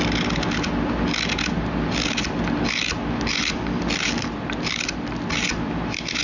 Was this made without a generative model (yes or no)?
yes